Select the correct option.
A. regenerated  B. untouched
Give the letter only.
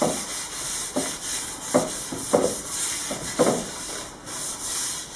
B